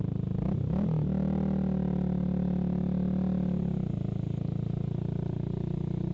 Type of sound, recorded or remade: recorded